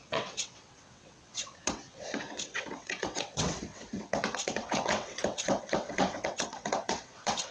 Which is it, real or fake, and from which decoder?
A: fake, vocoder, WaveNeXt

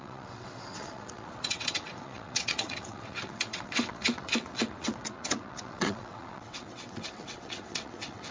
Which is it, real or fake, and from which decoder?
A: fake, vocoder, WaveNeXt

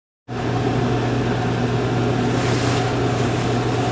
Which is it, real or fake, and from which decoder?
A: real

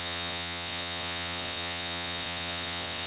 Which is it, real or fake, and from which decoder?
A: fake, vocoder, WaveNeXt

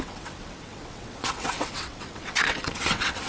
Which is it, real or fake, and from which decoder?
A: fake, vocoder, WaveNeXt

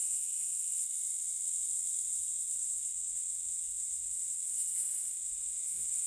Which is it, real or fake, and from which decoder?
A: fake, vocoder, WaveNeXt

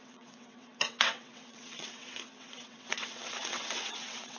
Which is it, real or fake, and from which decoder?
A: fake, vocoder, WaveNeXt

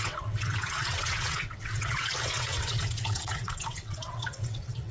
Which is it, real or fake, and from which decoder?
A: fake, vocoder, WaveNeXt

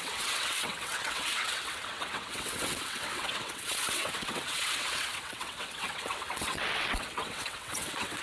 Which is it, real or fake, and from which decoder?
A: fake, vocoder, WaveNeXt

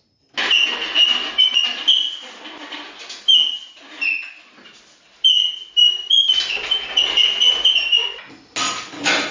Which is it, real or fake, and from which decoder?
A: real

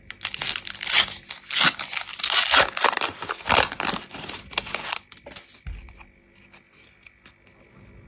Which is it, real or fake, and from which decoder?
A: real